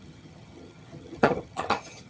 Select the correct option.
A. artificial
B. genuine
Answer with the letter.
A